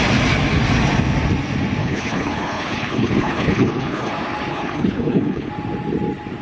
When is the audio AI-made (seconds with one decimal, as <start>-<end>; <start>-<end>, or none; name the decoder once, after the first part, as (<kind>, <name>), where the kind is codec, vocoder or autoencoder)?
1.8-4.1 (codec, HILCodec); 4.5-5.5